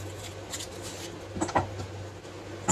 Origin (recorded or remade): recorded